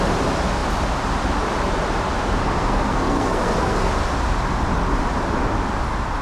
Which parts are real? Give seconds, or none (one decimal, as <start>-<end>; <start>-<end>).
0.0-2.4; 3.9-6.2